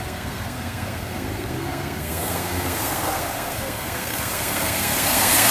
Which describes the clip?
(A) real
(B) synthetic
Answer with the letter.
B